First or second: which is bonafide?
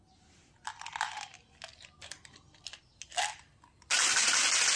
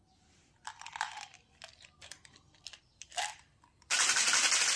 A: first